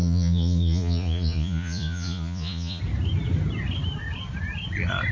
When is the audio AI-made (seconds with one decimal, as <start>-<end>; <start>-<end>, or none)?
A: 0.0-2.8